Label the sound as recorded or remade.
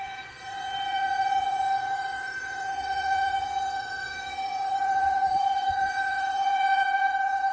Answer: remade